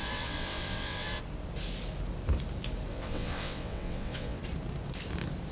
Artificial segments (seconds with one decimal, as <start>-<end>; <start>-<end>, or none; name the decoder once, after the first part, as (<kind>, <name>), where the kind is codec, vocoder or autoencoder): 0.0-1.2 (vocoder, WaveNeXt); 2.9-4.4

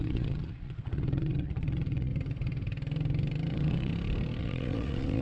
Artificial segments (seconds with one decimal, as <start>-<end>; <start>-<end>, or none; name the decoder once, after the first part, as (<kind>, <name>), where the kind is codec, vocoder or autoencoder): 0.0-2.1 (vocoder, Vocos); 3.5-3.9; 4.4-5.2

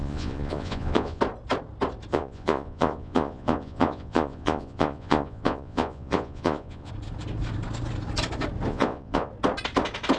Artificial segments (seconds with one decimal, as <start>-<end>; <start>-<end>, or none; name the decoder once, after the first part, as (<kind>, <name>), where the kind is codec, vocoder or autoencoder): 0.0-1.2 (vocoder, Vocos); 2.1-6.9; 8.7-9.3

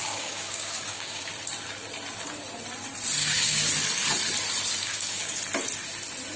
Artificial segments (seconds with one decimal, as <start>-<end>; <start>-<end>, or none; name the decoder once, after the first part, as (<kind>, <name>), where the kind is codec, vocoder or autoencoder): 0.0-1.3 (codec, DAC); 3.2-3.7; 4.8-5.4

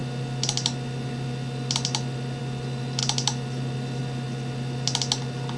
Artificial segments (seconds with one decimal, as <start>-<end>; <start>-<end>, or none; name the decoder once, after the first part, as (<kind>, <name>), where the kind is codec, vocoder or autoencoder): none

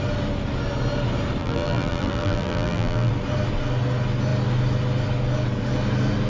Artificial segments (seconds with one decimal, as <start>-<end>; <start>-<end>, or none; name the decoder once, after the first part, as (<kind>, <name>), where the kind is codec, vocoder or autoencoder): 1.4-3.1 (vocoder, BigVGAN v2)